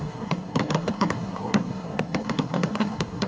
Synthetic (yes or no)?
yes